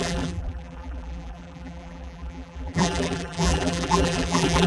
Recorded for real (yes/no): no